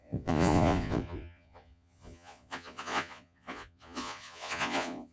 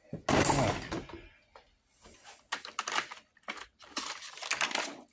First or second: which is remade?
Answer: first